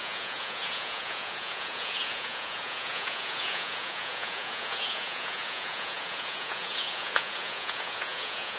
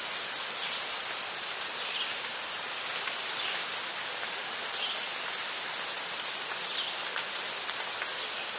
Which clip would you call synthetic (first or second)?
first